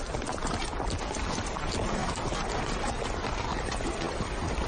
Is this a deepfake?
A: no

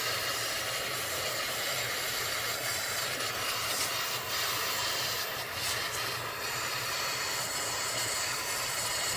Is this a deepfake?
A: no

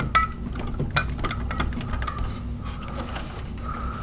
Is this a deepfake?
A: no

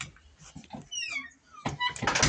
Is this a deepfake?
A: no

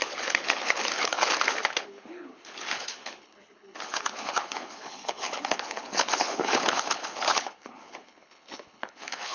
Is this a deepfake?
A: yes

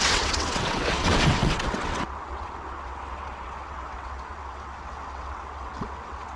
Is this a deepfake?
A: yes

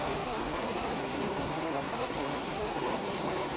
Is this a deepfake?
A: yes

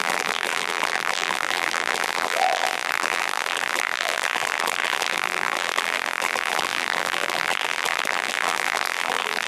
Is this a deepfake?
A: yes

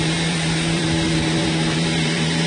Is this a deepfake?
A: yes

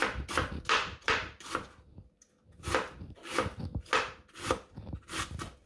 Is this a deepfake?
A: no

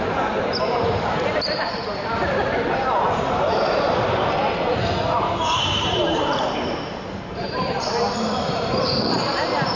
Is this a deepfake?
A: yes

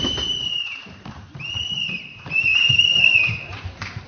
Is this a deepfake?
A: yes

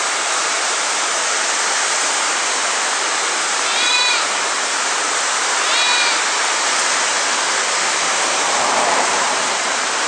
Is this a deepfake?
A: yes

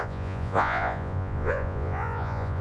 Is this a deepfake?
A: yes